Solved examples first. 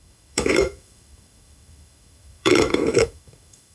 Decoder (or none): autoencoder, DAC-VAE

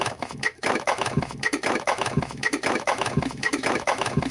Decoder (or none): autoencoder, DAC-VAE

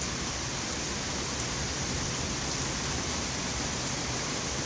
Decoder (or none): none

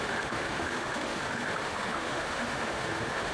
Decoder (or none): autoencoder, DAC-VAE